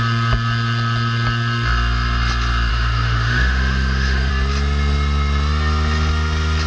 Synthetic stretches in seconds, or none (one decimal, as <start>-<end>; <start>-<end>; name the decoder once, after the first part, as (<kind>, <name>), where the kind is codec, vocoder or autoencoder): 2.7-4.3 (autoencoder, DAC-VAE)